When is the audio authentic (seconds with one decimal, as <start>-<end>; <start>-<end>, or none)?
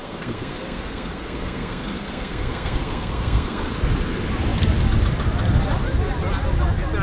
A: 3.7-7.0